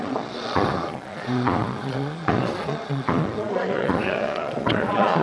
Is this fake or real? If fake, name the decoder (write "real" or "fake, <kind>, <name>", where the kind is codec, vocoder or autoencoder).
fake, vocoder, Vocos